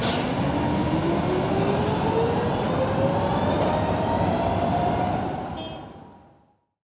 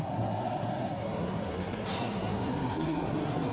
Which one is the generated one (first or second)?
second